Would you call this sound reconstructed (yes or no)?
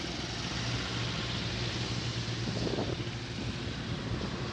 no